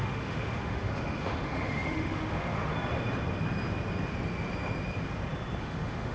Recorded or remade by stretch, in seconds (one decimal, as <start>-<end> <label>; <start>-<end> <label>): 0.0-2.7 remade; 2.7-5.6 recorded; 5.6-6.1 remade

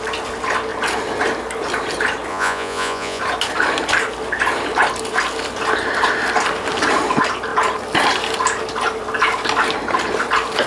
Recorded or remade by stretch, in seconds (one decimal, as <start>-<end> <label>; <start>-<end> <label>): 0.0-2.3 recorded; 2.3-3.2 remade; 3.2-10.7 recorded

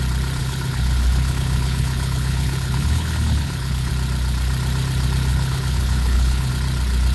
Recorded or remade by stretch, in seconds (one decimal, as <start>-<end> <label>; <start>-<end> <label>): 0.0-0.4 recorded; 0.4-3.9 remade; 3.9-5.3 recorded; 5.3-6.5 remade; 6.5-7.1 recorded

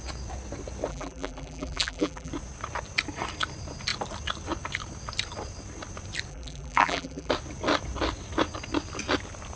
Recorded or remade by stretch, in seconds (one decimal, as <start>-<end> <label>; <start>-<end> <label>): 0.0-0.9 recorded; 0.9-2.3 remade; 2.3-6.3 recorded; 6.3-7.3 remade; 7.3-9.6 recorded

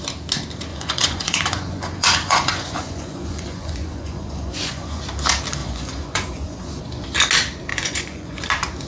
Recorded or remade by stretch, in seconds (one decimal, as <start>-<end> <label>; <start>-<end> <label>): 0.0-0.7 recorded; 0.7-5.0 remade; 5.0-5.6 recorded; 5.6-6.8 remade; 6.8-7.7 recorded; 7.7-8.4 remade; 8.4-8.9 recorded

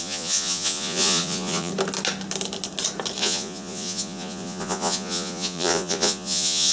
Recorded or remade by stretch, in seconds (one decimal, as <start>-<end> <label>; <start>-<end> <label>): 0.0-1.7 remade; 1.7-3.2 recorded; 3.2-6.7 remade

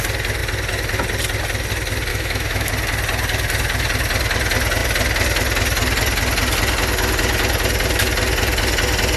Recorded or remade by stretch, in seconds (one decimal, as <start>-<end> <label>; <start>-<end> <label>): 0.0-2.1 recorded; 2.1-2.7 remade; 2.7-9.2 recorded